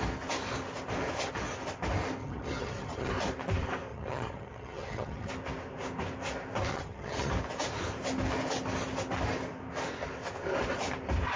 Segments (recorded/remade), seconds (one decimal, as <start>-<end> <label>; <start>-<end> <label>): 0.0-2.2 recorded; 2.2-3.1 remade; 3.1-3.9 recorded; 3.9-5.3 remade; 5.3-6.7 recorded; 6.7-7.3 remade; 7.3-11.4 recorded